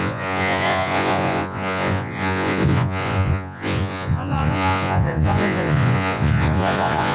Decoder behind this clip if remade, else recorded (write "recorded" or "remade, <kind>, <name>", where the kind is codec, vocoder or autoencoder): remade, vocoder, Vocos